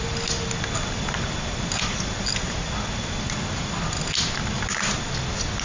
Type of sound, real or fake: real